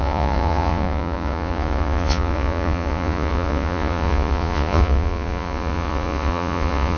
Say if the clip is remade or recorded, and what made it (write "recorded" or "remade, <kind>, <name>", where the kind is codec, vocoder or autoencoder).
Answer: remade, vocoder, Vocos